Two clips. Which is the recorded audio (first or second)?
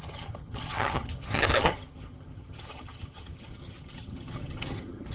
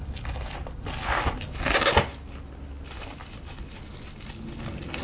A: second